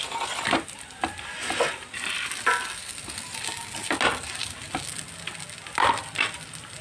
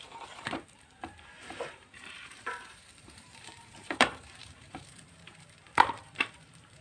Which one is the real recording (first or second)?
first